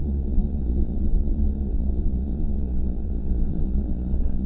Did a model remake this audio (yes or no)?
yes